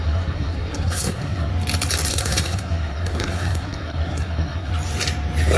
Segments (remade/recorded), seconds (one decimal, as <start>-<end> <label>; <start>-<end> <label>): 0.0-1.5 remade; 1.5-2.1 recorded; 2.1-4.7 remade; 4.7-5.6 recorded